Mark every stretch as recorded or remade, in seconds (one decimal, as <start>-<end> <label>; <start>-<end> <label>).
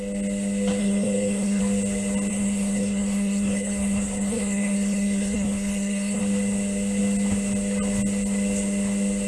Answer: 0.0-0.8 recorded; 0.8-1.6 remade; 1.6-2.3 recorded; 2.3-6.2 remade; 6.2-9.3 recorded